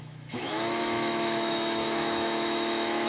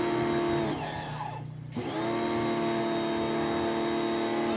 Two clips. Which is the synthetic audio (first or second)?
first